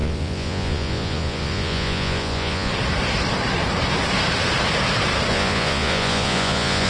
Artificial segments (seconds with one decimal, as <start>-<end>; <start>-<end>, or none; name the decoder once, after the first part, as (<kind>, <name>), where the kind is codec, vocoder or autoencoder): 0.0-2.7 (vocoder, Vocos); 5.3-6.9